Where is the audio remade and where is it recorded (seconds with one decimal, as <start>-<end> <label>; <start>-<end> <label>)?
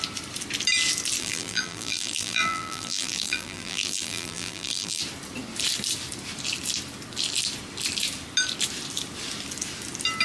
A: 0.0-1.2 recorded; 1.2-5.0 remade; 5.0-10.2 recorded